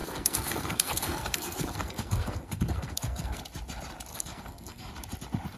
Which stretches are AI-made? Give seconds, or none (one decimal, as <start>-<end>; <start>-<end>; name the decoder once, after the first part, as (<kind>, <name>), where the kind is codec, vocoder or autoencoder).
0.0-3.4 (codec, SNAC); 4.1-4.9